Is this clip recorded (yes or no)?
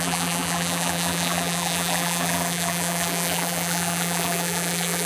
no